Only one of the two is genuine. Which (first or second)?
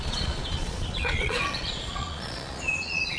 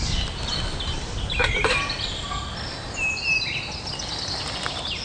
second